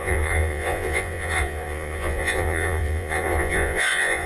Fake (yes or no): yes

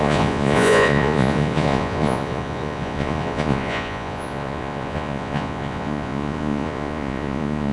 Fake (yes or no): yes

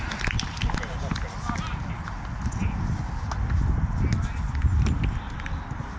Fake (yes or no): no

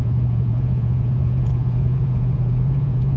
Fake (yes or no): yes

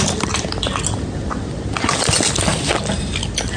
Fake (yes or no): no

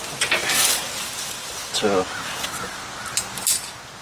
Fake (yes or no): no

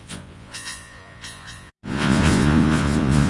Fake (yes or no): yes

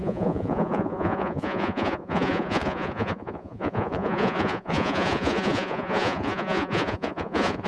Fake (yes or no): yes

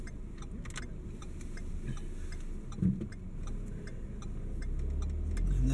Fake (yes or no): no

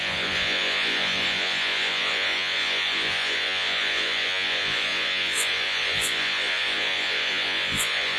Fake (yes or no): yes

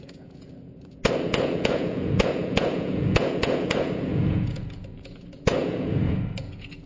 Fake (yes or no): yes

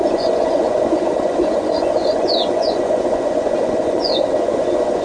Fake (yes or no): yes